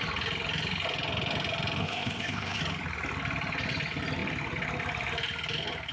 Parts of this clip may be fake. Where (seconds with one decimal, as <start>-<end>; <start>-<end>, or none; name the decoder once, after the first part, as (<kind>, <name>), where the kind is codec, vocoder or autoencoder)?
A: 1.8-2.6 (codec, ZipCodec)